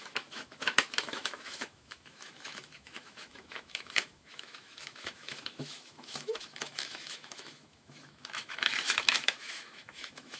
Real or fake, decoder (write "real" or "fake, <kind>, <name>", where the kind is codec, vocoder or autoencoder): fake, autoencoder, DAC-VAE